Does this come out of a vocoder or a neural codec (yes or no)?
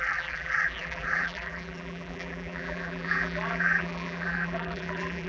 yes